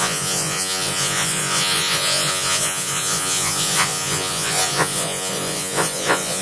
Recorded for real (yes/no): no